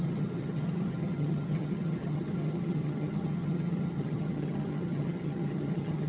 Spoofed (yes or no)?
yes